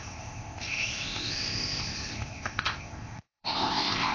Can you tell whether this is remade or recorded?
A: remade